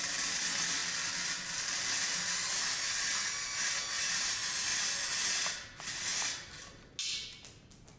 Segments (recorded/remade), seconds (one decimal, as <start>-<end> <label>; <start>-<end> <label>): 0.0-8.0 recorded